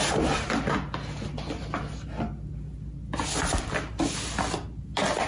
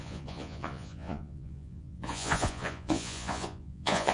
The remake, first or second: second